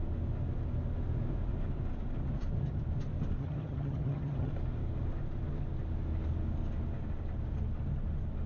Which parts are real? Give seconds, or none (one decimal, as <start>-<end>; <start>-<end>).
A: 0.0-3.4; 4.5-8.5